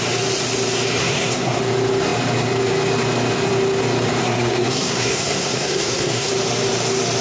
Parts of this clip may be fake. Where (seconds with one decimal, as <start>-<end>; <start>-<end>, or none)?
1.0-1.6; 4.2-6.3